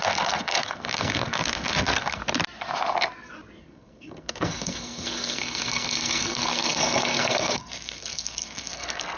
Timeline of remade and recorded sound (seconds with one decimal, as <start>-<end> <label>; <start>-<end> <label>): 0.0-2.2 remade; 2.2-3.6 recorded; 3.6-9.2 remade